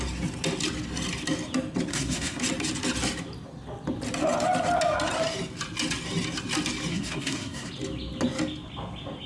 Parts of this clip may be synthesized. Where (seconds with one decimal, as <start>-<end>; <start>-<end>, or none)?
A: 1.9-2.4; 6.9-7.7